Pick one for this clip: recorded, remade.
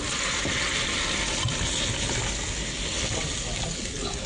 recorded